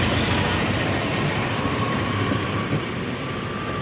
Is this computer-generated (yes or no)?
no